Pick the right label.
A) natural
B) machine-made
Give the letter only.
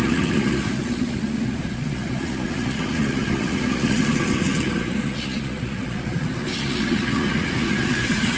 B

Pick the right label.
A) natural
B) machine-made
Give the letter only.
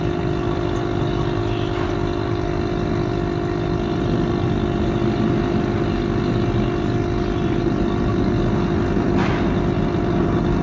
A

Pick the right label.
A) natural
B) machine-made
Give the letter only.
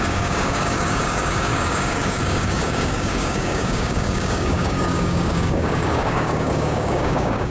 B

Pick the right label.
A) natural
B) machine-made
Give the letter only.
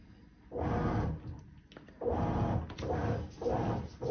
A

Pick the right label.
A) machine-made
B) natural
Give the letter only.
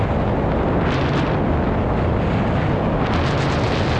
B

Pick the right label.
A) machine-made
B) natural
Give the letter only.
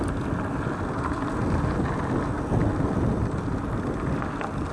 B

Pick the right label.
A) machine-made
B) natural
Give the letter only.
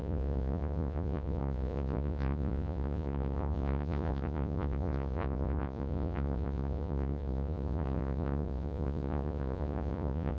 A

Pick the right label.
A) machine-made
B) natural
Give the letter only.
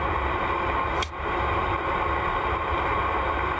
B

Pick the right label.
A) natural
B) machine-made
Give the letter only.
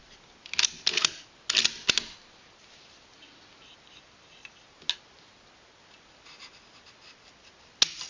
A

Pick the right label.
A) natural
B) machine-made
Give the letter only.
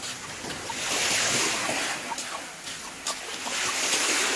A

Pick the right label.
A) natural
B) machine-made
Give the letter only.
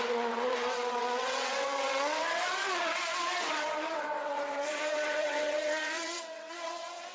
B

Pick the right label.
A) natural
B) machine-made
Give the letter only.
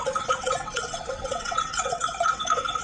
B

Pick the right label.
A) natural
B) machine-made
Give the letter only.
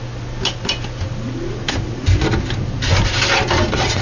A